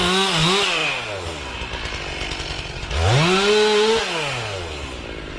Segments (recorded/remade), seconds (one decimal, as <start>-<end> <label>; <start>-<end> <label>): 0.0-5.4 recorded